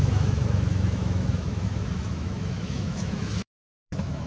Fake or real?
fake